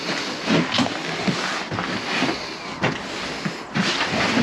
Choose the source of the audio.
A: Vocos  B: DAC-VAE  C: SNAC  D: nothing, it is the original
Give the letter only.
D